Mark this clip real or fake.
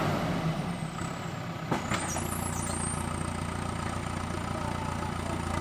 real